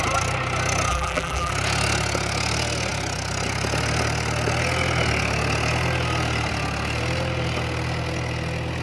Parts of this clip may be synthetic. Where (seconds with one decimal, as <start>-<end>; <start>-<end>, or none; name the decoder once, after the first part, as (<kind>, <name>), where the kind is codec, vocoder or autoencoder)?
0.9-1.5 (vocoder, BigVGAN v2)